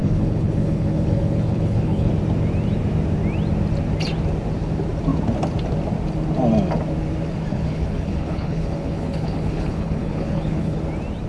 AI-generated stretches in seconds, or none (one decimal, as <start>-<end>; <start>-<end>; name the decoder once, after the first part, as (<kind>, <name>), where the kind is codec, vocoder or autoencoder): 0.0-2.1 (codec, HILCodec); 7.5-10.8

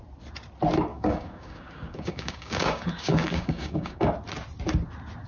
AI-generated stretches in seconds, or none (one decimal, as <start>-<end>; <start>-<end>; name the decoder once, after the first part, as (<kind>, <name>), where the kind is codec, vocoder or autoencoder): 0.9-4.1 (codec, DAC)

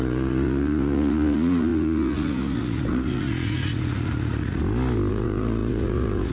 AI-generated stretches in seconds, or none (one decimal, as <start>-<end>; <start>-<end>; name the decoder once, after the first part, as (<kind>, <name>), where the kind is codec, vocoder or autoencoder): 0.0-4.6 (vocoder, Vocos); 5.1-6.3

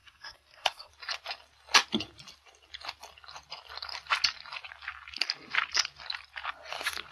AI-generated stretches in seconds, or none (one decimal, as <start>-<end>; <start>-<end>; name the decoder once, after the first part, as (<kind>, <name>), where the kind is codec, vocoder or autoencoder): 0.0-0.9 (codec, SNAC)

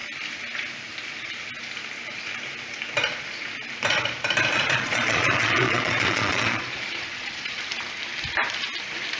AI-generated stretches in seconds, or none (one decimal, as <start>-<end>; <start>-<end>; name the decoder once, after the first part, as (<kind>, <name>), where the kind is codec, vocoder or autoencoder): 4.5-7.6 (vocoder, Vocos)

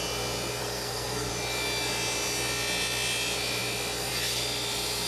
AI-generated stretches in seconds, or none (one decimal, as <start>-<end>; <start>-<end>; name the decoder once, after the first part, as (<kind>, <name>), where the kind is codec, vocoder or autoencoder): 0.6-1.3 (codec, SNAC)

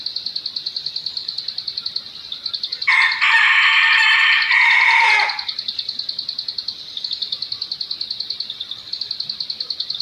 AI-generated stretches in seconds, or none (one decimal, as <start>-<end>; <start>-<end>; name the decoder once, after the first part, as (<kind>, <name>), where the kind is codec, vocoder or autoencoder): 1.2-1.8 (vocoder, BigVGAN v2)

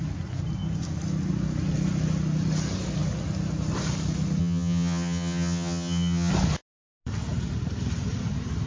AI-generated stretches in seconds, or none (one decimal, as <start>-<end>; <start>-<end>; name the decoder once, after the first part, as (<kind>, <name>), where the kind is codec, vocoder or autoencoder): 4.4-6.3 (vocoder, HiFi-GAN)